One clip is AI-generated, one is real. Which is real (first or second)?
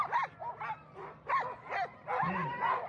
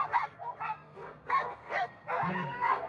first